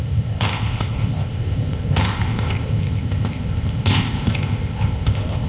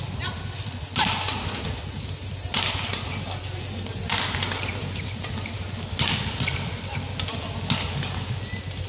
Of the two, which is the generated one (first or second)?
first